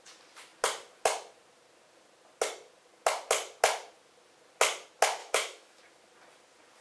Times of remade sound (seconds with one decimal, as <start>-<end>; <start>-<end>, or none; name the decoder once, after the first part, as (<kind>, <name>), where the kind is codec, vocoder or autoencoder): 5.2-5.8 (autoencoder, DAC-VAE)